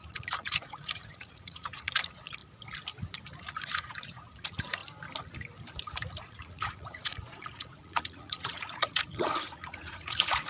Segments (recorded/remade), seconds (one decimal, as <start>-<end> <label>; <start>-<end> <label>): 0.0-2.4 remade; 2.4-3.5 recorded; 3.5-4.8 remade; 4.8-6.2 recorded; 6.2-10.5 remade